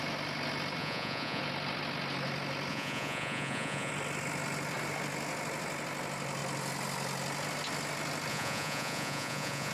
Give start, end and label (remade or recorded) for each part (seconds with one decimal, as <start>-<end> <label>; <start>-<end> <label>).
0.0-0.8 recorded; 0.8-1.4 remade; 1.4-2.7 recorded; 2.7-3.9 remade; 3.9-8.3 recorded; 8.3-9.7 remade